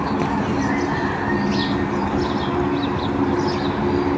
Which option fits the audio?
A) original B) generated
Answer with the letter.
A